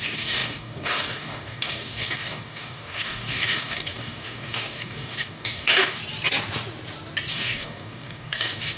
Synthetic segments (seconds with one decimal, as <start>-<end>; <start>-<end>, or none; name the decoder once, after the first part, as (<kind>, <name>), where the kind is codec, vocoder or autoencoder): 0.0-6.0 (codec, DAC); 7.3-8.8

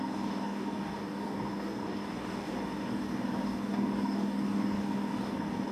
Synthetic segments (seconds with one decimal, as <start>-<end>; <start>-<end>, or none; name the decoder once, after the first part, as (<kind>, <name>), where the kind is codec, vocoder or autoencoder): 0.0-5.7 (codec, DAC)

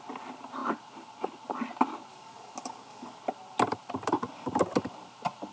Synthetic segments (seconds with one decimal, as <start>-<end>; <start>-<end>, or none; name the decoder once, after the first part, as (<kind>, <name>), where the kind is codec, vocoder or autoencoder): 2.1-3.2 (codec, DAC)

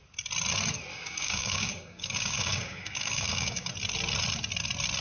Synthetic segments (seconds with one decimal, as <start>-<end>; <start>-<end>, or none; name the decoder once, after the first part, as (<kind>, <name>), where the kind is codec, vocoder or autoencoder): 0.9-3.7 (codec, DAC)

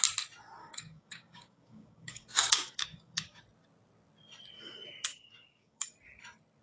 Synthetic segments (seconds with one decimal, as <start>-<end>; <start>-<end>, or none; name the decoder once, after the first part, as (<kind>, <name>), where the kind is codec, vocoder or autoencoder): 0.6-3.4 (codec, DAC); 5.1-5.9